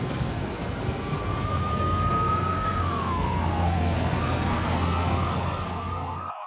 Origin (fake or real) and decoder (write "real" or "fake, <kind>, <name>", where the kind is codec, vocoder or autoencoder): fake, codec, SNAC